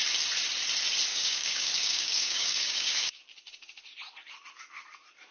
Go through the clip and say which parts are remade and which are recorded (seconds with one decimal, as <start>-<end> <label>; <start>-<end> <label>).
0.0-1.1 recorded; 1.1-3.2 remade; 3.2-5.3 recorded